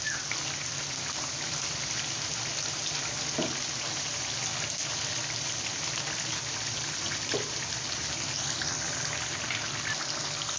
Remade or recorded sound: recorded